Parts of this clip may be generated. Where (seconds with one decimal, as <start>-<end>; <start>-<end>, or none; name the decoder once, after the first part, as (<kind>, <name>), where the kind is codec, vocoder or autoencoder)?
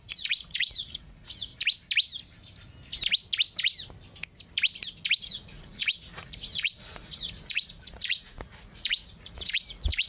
0.0-1.5 (vocoder, Vocos); 5.2-10.1